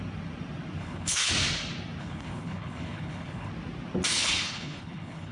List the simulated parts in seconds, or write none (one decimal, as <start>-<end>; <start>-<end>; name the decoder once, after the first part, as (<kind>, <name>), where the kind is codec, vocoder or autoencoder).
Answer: 0.8-1.3 (codec, HILCodec); 2.0-3.5; 4.1-5.3